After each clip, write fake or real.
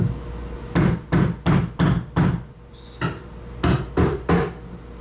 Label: real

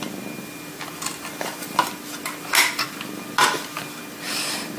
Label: real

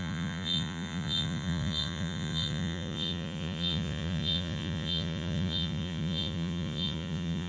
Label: fake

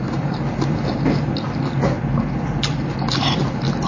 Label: real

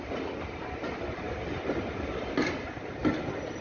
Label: real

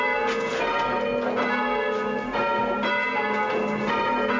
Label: real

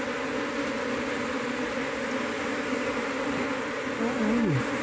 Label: real